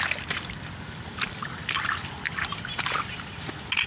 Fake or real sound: real